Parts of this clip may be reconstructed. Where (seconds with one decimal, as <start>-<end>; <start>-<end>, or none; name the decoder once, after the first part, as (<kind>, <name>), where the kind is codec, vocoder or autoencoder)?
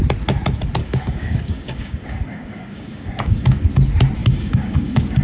0.8-3.7 (codec, DAC); 4.2-5.2